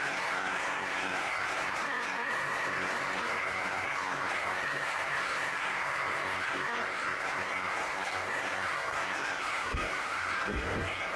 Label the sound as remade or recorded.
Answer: remade